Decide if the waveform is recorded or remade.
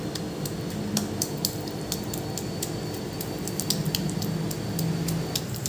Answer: recorded